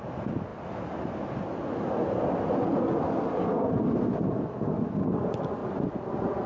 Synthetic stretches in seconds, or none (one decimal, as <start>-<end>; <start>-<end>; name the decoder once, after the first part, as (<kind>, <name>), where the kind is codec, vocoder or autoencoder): none